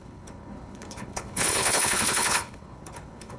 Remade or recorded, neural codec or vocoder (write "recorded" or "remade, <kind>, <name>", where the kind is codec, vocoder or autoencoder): remade, codec, HILCodec